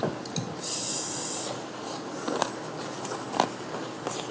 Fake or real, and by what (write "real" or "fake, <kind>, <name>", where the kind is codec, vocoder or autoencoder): real